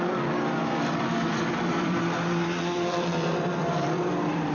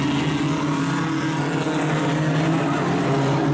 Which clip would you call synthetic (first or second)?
first